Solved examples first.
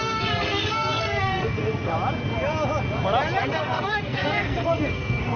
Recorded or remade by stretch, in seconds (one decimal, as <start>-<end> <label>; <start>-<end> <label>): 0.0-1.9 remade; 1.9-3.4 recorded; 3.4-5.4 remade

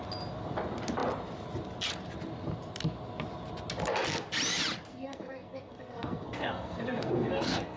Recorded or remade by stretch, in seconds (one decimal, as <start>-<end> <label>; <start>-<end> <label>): 0.0-4.9 recorded; 4.9-7.8 remade

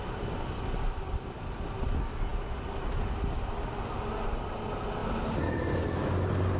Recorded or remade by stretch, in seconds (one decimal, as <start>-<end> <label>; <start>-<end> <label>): 0.0-6.6 recorded

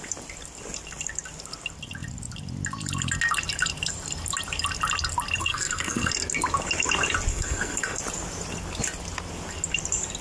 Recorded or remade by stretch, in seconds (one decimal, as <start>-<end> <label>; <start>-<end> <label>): 0.0-5.4 recorded; 5.4-6.1 remade; 6.1-7.3 recorded; 7.3-8.0 remade; 8.0-10.2 recorded

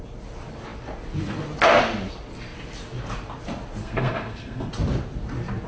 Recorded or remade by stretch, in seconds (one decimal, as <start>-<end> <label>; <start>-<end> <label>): 0.0-3.8 recorded; 3.8-4.7 remade; 4.7-5.7 recorded

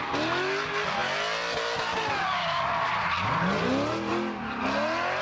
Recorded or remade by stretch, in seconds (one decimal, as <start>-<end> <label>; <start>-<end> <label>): 0.0-5.2 recorded

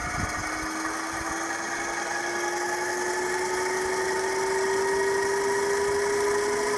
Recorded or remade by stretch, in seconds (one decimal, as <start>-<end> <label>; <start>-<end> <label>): 0.0-6.8 recorded